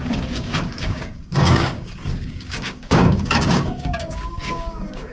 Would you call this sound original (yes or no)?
no